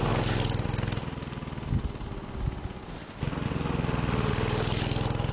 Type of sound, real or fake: real